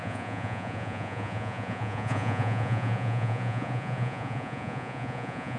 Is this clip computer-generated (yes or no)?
yes